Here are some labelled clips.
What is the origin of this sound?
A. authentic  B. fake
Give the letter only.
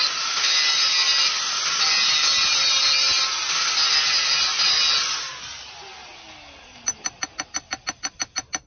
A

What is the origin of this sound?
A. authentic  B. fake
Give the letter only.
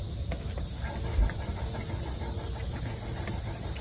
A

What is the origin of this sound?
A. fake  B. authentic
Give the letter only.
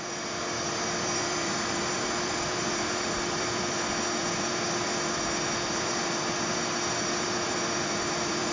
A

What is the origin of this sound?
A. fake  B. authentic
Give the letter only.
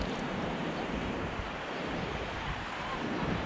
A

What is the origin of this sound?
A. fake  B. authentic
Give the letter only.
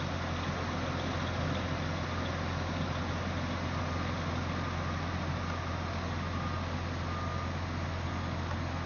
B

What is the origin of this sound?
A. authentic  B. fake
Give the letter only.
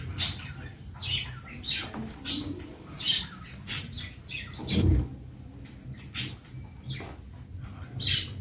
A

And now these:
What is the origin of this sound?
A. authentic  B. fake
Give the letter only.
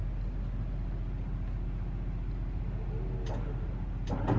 A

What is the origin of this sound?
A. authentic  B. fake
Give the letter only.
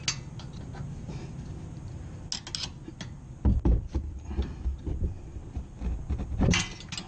A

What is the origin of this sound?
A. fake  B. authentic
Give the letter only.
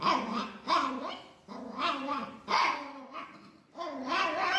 B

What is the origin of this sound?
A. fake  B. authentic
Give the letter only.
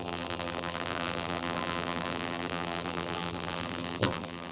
A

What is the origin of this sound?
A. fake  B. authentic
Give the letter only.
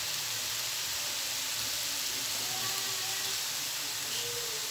B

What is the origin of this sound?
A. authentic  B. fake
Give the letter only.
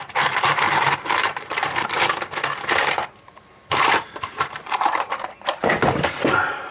B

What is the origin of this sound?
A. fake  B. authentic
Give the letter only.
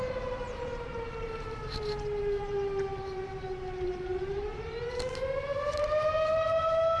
A